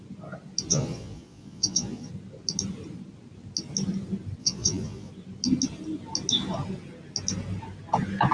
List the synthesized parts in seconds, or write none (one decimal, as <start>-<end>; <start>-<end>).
0.7-2.1; 4.4-5.1